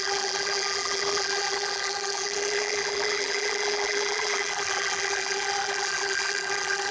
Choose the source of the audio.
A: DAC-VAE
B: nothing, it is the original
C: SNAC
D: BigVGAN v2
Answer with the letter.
D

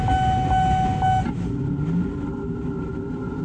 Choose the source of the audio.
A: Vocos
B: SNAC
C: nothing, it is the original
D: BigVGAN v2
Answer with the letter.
C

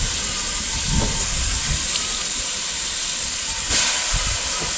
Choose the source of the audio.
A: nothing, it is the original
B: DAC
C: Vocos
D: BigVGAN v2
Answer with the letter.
A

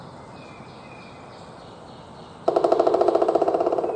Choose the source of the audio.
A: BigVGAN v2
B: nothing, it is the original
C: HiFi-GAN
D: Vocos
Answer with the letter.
B